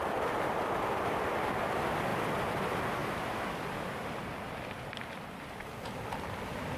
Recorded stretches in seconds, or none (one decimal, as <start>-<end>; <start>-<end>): 0.0-6.8